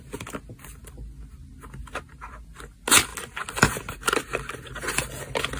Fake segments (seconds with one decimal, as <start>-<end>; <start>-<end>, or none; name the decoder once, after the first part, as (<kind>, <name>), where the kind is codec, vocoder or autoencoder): none